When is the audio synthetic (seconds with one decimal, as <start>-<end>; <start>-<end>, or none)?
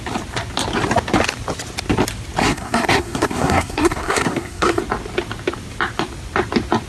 2.4-4.8